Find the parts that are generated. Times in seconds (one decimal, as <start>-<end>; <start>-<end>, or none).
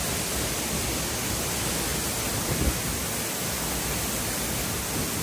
none